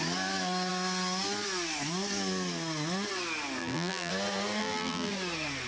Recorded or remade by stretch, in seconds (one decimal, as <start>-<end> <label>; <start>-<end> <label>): 0.0-3.6 recorded; 3.6-4.1 remade; 4.1-4.6 recorded; 4.6-5.1 remade; 5.1-5.7 recorded